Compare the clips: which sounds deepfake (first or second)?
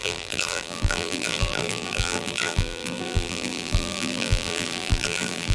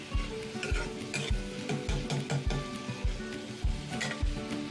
first